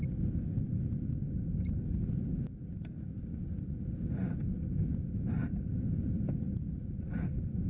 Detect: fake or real real